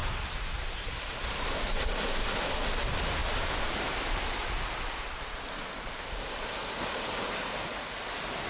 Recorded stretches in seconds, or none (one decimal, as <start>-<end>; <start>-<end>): 0.0-8.5